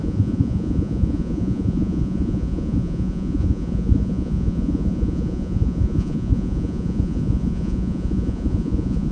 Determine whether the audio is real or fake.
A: fake